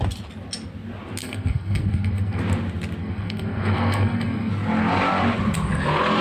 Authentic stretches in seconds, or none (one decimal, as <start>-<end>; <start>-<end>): 0.0-1.2; 2.4-3.0; 4.5-6.2